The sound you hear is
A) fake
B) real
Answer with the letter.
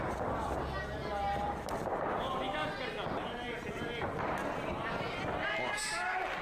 B